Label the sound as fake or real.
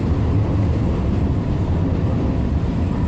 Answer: real